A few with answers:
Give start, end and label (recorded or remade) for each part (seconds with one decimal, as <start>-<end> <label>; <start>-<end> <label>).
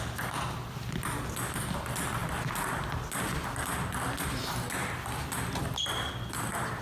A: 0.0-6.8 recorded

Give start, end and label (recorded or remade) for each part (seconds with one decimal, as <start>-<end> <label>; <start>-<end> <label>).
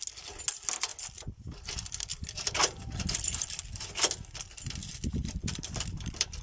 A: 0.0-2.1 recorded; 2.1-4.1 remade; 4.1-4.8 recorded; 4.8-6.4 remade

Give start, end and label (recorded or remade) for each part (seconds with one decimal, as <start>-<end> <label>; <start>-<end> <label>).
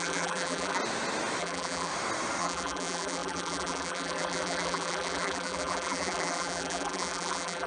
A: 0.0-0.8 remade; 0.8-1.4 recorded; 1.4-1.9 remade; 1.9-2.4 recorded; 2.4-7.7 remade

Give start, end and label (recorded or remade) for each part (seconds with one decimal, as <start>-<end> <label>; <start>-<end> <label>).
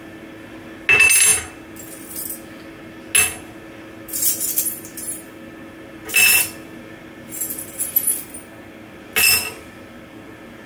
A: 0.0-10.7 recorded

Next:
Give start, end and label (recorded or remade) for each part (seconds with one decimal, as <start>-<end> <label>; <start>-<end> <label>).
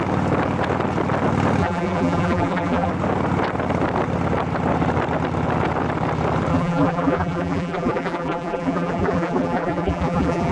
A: 0.0-1.6 recorded; 1.6-2.9 remade; 2.9-6.5 recorded; 6.5-10.5 remade